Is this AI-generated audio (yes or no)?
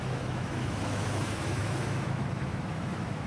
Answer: yes